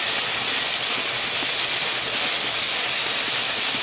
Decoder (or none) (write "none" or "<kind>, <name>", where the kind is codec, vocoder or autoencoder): none